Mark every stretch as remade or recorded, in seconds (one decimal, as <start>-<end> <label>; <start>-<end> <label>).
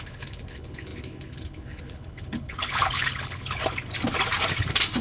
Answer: 0.0-3.6 remade; 3.6-5.0 recorded